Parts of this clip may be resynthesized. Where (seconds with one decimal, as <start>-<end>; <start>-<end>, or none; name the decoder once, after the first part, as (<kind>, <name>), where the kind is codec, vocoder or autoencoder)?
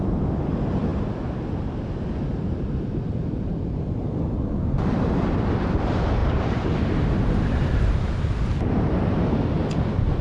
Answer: 6.2-8.5 (vocoder, BigVGAN v2)